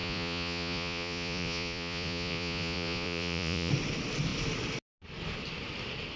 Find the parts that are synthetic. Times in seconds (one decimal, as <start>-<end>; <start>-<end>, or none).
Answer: 0.0-3.7